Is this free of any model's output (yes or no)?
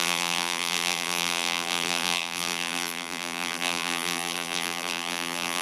no